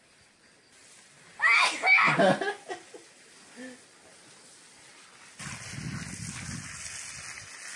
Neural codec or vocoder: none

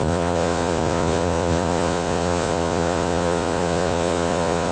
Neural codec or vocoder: vocoder, Vocos